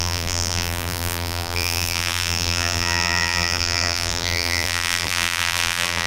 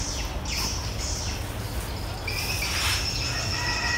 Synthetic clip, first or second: first